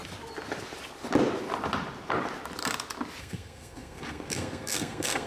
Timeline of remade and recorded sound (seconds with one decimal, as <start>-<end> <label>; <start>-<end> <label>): 0.0-3.2 recorded; 3.2-5.3 remade